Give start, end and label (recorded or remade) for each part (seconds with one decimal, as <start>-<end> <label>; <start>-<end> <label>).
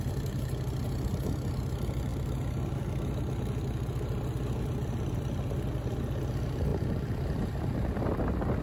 0.0-8.6 recorded